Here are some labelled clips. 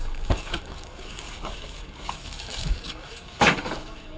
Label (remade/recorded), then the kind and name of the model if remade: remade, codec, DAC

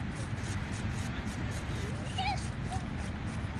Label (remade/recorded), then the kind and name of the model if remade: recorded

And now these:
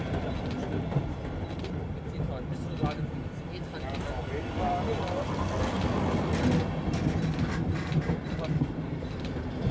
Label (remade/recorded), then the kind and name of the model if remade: recorded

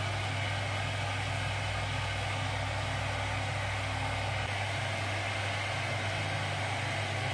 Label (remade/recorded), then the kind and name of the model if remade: recorded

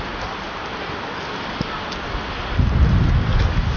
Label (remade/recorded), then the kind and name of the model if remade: recorded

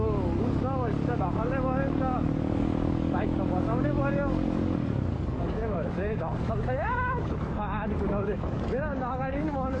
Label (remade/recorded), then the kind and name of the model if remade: remade, codec, DAC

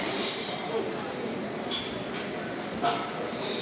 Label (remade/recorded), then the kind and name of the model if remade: recorded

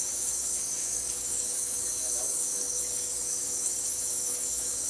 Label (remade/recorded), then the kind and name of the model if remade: remade, codec, DAC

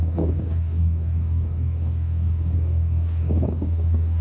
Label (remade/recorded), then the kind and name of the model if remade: remade, codec, DAC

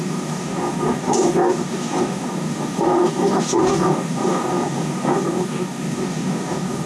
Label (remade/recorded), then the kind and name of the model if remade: remade, codec, DAC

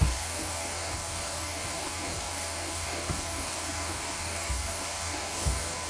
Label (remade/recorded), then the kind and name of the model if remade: remade, codec, DAC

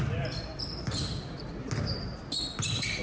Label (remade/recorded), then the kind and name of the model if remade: recorded